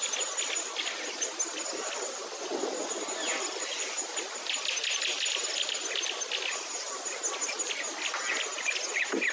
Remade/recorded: recorded